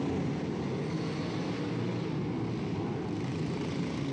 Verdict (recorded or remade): recorded